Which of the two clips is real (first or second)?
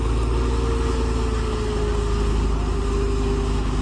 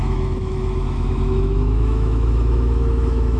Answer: first